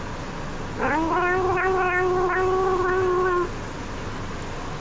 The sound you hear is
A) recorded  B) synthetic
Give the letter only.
A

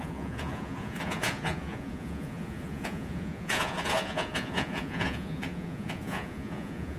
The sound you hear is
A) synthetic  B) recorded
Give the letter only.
A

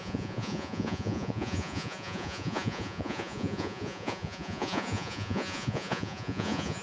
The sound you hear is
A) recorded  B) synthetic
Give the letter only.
B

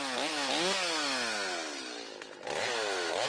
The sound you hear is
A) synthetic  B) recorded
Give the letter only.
B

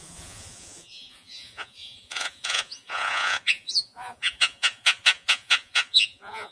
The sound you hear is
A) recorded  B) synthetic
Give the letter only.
B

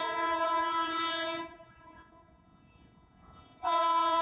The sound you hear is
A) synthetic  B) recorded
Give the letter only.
A